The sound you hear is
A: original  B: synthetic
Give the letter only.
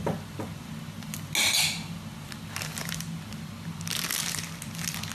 A